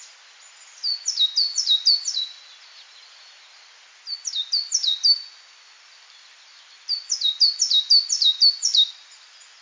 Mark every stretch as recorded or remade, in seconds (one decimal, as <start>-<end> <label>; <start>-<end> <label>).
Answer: 0.0-9.6 recorded